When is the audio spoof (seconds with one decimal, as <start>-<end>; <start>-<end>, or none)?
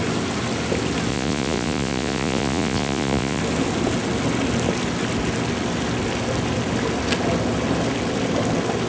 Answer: 1.1-3.4